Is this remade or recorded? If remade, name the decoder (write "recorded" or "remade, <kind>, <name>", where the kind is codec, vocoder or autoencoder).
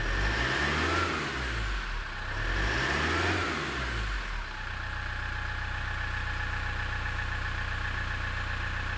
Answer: recorded